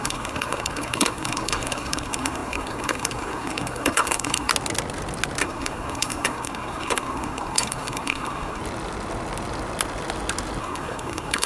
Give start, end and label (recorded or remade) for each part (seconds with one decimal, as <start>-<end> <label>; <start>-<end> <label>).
0.0-4.5 remade; 4.5-5.4 recorded; 5.4-8.6 remade; 8.6-10.6 recorded; 10.6-11.5 remade